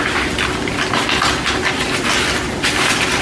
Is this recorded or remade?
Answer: recorded